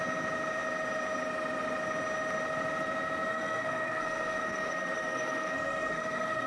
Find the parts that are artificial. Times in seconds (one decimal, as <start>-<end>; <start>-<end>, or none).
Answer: 3.3-6.5